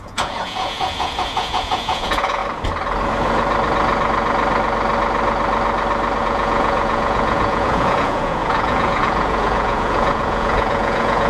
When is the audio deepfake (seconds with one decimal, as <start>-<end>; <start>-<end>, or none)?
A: 0.0-2.4; 6.2-11.3